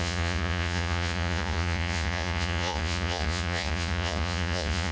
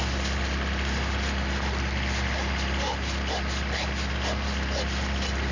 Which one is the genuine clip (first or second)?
second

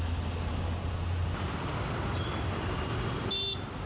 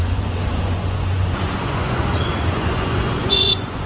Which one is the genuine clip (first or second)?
first